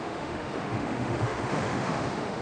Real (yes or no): no